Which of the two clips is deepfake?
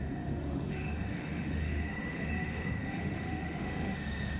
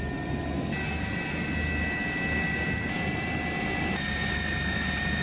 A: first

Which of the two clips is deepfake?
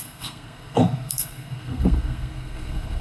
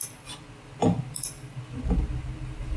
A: first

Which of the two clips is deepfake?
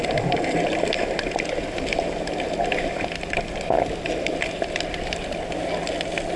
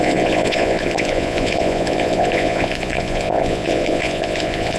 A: second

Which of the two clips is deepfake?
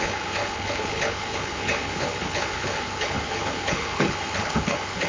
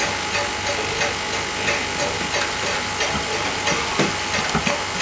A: first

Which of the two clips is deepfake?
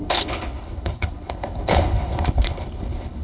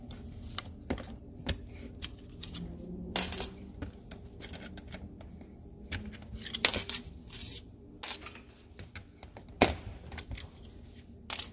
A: first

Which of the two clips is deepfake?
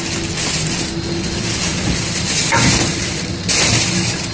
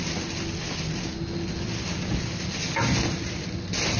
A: first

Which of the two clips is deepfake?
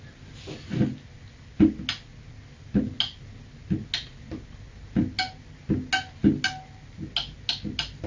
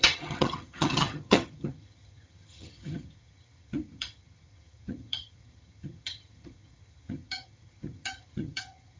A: second